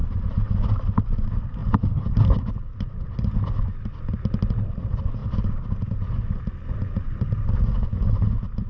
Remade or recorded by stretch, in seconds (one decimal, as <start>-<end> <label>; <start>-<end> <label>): 0.0-8.7 recorded